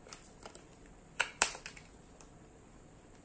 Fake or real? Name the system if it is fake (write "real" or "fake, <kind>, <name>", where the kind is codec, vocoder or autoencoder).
real